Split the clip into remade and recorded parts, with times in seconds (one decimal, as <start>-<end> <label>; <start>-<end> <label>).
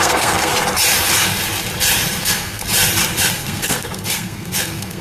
0.0-0.5 remade; 0.5-2.2 recorded; 2.2-2.6 remade; 2.6-3.3 recorded; 3.3-5.0 remade